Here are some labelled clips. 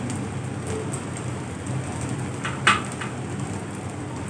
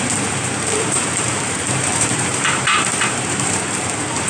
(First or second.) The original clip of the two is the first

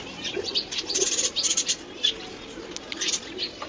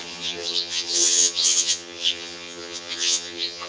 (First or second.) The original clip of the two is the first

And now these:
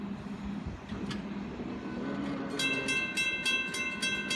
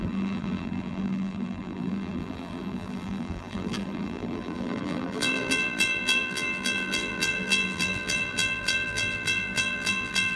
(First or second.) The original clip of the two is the first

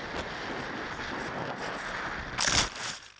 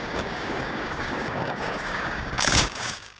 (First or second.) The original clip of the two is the first